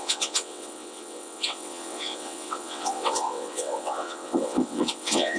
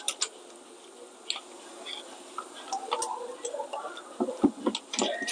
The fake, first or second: first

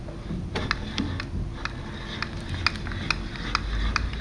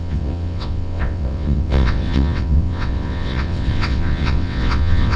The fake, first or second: second